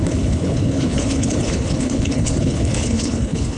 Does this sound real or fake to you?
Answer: fake